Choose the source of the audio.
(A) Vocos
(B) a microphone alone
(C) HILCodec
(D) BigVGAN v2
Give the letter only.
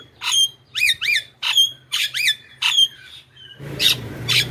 D